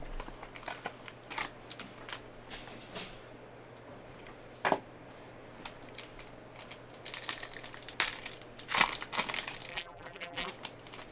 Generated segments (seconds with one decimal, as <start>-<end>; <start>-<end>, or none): 9.7-10.5